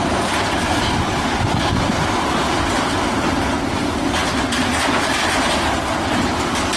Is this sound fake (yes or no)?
no